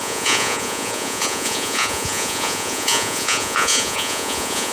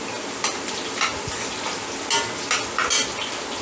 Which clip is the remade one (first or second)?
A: first